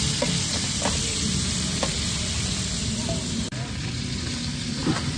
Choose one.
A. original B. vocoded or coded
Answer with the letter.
B